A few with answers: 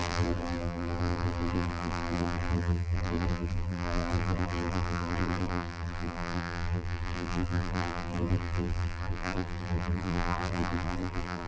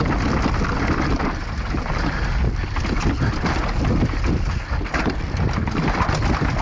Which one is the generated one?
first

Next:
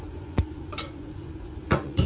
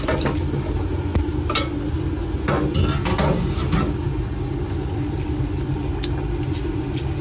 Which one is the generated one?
first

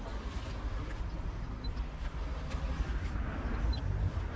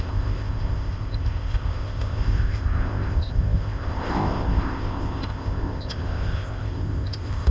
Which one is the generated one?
second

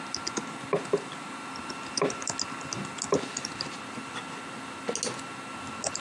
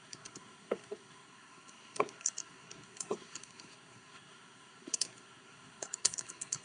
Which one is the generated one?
second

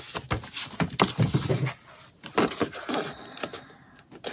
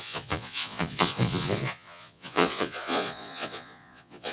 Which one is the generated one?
second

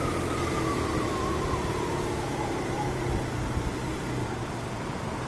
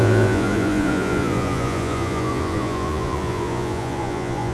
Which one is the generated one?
second